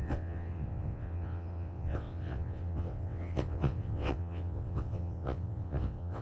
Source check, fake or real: fake